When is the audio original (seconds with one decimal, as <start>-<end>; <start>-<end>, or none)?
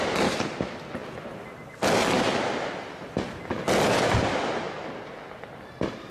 0.0-6.1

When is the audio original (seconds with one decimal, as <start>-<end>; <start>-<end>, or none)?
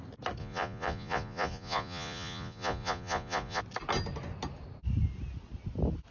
0.0-0.4; 3.6-6.1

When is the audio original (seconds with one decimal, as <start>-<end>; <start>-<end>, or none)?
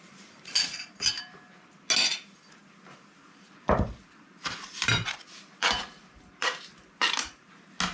0.0-2.6; 7.3-7.9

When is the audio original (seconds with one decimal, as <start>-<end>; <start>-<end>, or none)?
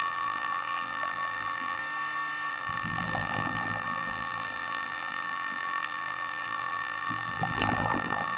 1.8-2.5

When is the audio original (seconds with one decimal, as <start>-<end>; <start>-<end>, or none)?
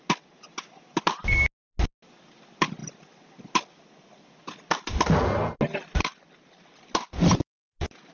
0.0-8.1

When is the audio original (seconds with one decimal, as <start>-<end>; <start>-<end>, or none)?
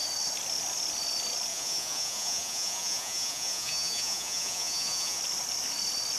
0.0-1.5; 5.2-6.2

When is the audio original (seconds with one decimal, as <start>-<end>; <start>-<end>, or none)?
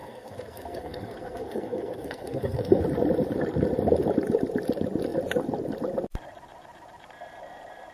2.8-7.9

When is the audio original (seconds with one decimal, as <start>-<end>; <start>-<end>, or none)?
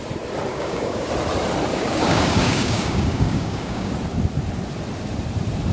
0.0-0.5; 1.1-1.7; 3.9-5.7